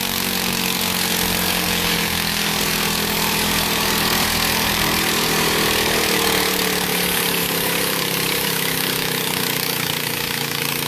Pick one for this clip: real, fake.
fake